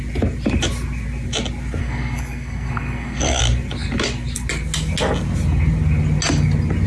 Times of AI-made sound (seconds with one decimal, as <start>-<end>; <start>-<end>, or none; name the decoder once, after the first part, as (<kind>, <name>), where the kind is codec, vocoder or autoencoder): 1.8-3.4 (codec, SNAC)